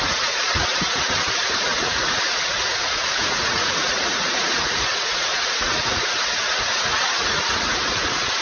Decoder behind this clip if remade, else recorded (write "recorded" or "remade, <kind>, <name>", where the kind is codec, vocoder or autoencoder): remade, vocoder, Vocos